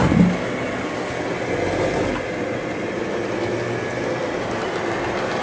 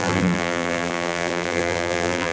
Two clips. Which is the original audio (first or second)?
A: first